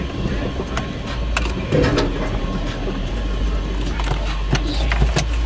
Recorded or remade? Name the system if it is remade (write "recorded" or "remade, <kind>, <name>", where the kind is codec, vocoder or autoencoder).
recorded